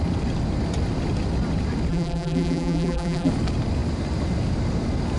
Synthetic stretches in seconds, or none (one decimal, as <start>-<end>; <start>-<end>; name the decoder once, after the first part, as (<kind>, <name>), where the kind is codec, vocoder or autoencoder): 1.9-3.3 (vocoder, BigVGAN v2)